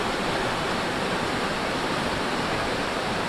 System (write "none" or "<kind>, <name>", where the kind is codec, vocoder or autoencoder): vocoder, BigVGAN v2